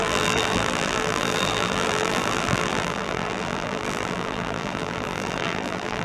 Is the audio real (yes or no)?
no